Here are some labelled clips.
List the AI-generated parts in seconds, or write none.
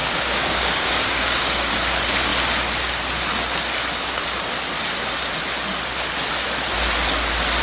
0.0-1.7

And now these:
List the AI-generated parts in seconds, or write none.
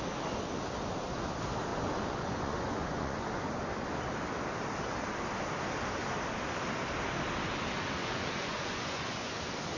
1.7-3.6; 8.0-9.4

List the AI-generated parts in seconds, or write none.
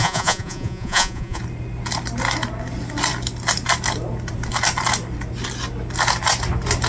0.0-1.4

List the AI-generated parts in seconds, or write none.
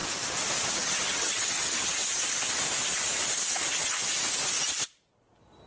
0.7-2.0